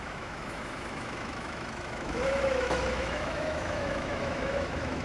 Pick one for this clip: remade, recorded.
remade